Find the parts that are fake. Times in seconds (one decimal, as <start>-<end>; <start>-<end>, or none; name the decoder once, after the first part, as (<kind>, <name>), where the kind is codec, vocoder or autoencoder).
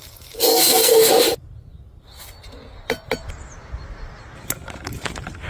0.5-1.1 (codec, SNAC)